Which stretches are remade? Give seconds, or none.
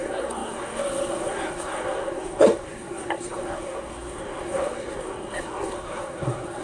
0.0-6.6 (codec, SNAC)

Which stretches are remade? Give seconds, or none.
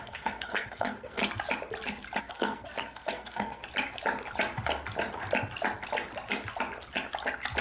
0.0-1.2 (codec, SNAC); 2.2-3.6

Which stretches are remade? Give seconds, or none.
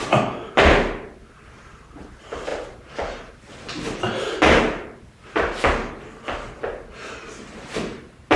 none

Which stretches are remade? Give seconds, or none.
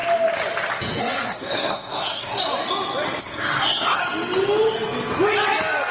1.0-2.4 (codec, SNAC); 3.2-4.0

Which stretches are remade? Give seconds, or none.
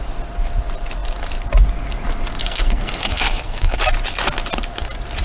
2.4-3.8 (codec, SNAC)